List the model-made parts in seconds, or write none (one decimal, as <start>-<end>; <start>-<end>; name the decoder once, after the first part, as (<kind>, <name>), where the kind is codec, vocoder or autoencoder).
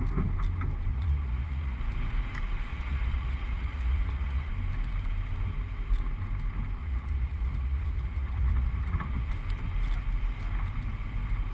0.9-1.8 (vocoder, Vocos); 2.7-4.5; 6.8-9.3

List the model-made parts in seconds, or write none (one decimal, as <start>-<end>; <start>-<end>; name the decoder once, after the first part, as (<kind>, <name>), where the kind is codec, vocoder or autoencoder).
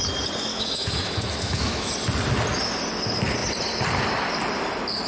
0.5-1.9 (autoencoder, DAC-VAE)